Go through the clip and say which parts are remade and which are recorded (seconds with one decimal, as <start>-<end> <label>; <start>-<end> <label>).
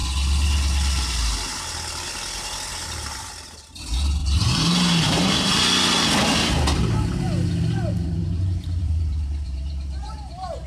0.0-4.2 recorded; 4.2-5.6 remade; 5.6-8.2 recorded; 8.2-10.7 remade